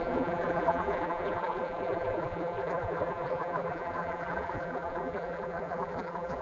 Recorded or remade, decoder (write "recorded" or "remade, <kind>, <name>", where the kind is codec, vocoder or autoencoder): remade, vocoder, BigVGAN v2